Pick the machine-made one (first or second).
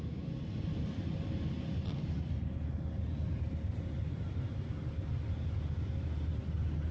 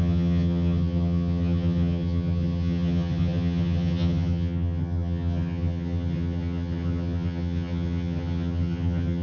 second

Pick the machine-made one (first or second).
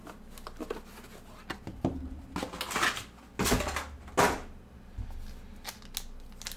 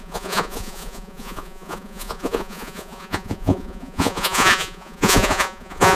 second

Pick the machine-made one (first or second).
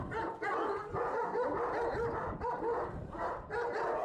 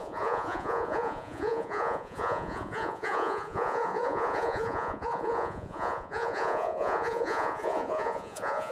second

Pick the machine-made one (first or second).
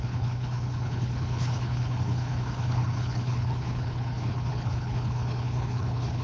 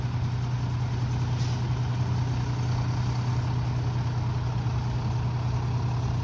first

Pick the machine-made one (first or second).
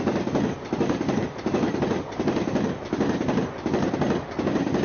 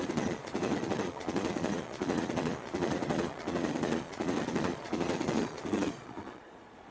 second